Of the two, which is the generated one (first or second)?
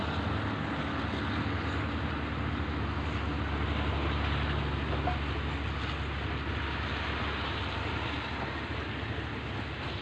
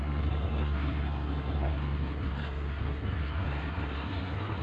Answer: second